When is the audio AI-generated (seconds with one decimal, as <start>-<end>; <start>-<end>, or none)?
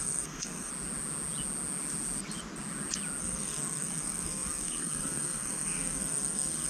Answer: 0.0-0.7; 3.2-6.7